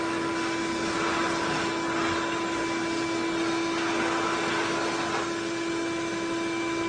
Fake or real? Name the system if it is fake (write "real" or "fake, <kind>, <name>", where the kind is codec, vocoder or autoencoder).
real